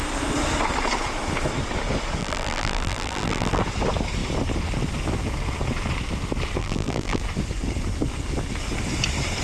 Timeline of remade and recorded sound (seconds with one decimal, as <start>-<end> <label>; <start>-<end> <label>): 0.0-2.2 recorded; 2.2-3.6 remade; 3.6-6.6 recorded; 6.6-7.2 remade; 7.2-9.4 recorded